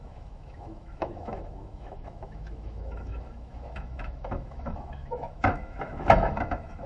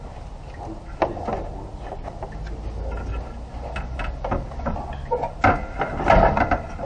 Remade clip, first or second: first